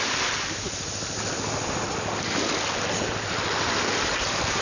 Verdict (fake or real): real